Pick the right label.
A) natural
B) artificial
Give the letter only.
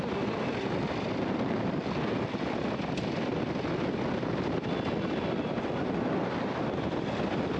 A